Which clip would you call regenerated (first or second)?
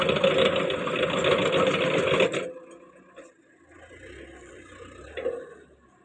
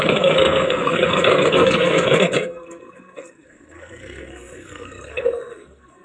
second